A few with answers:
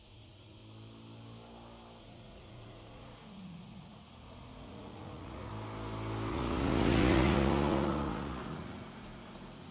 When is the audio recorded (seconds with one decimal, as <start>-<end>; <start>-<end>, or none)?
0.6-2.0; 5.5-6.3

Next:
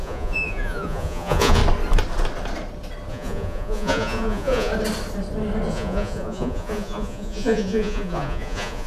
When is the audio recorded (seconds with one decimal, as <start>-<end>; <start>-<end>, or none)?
1.6-3.1; 4.7-5.7

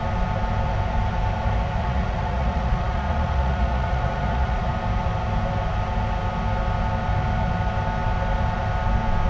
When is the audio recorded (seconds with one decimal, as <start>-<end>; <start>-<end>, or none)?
0.0-1.8; 4.7-9.3